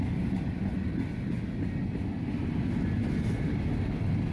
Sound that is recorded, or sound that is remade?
recorded